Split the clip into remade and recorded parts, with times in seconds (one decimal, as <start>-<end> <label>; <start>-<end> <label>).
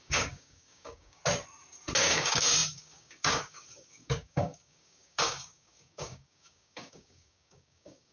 0.0-1.2 remade; 1.2-2.0 recorded; 2.0-8.1 remade